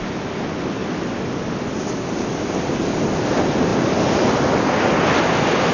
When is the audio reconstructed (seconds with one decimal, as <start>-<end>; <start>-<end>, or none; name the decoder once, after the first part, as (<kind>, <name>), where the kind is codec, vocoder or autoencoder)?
none